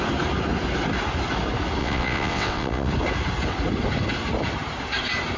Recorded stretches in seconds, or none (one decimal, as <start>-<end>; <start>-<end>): 0.0-1.8; 2.9-5.4